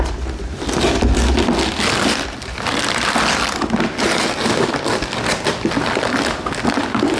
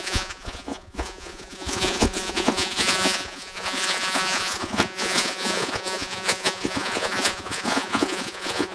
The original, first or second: first